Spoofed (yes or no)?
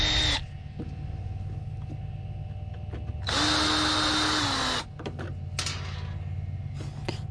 no